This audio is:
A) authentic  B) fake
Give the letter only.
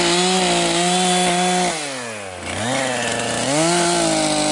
A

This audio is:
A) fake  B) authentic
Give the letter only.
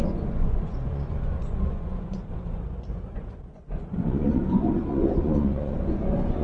A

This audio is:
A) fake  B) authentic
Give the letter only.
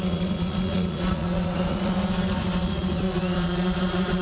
A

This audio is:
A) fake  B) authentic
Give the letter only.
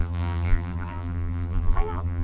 A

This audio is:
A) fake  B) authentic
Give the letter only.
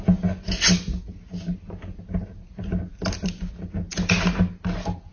B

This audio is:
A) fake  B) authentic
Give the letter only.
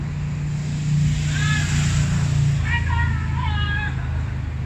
B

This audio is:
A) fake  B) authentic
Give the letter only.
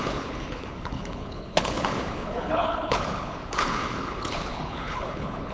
A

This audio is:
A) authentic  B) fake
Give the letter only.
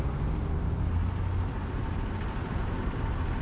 A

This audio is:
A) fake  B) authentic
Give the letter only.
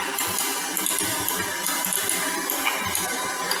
B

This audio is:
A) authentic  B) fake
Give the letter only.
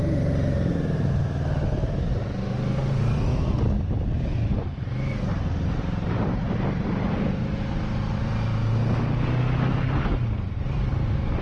A